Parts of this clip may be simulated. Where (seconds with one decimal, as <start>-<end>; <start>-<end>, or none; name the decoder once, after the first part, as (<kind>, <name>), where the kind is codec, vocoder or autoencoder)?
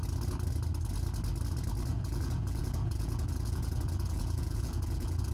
1.9-5.3 (vocoder, Vocos)